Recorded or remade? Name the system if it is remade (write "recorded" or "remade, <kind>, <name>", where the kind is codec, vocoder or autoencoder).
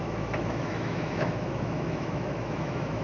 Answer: remade, autoencoder, DAC-VAE